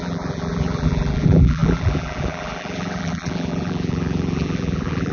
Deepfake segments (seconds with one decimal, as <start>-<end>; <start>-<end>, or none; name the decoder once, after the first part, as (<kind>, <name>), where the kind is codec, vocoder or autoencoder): 0.0-5.1 (vocoder, BigVGAN v2)